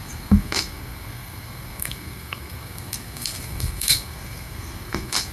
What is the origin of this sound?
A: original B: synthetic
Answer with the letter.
B